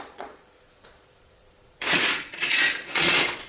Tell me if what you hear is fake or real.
fake